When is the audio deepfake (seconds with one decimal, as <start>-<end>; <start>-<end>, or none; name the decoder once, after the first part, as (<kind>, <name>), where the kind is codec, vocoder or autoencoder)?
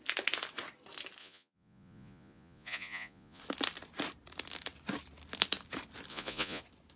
1.2-3.4 (vocoder, Vocos); 6.1-6.6